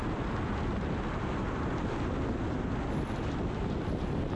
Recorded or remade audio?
recorded